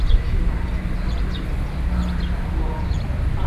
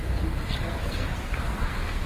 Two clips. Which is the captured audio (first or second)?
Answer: first